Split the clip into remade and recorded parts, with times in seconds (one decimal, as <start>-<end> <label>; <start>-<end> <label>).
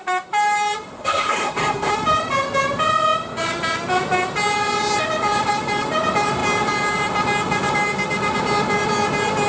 0.0-1.0 recorded; 1.0-1.9 remade; 1.9-9.5 recorded